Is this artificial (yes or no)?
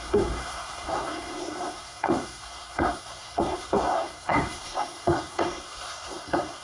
yes